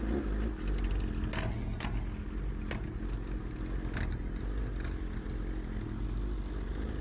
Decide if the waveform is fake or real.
real